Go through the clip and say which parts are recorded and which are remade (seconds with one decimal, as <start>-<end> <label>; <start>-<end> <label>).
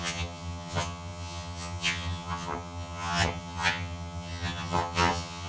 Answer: 0.0-5.5 remade